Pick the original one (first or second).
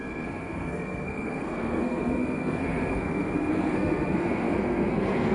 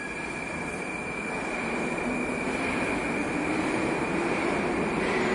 second